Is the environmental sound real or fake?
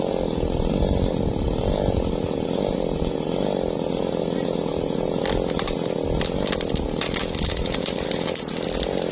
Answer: real